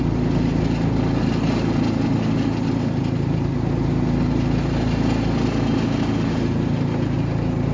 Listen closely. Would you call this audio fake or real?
real